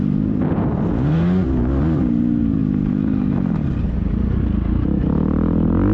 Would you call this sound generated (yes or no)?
no